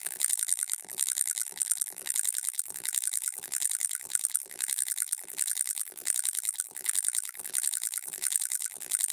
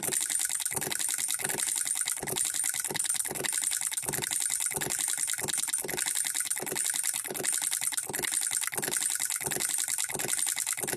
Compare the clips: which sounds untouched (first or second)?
second